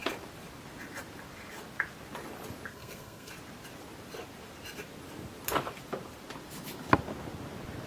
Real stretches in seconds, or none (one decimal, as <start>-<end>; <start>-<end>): 0.0-2.7; 3.3-7.9